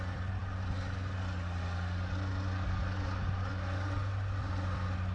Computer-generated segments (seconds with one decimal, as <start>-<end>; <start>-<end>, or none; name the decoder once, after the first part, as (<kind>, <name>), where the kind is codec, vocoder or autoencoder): none